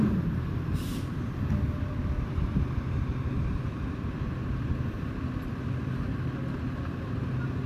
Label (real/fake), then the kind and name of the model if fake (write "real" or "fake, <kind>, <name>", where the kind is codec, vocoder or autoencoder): real